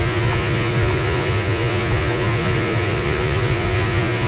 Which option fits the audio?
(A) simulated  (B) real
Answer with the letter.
A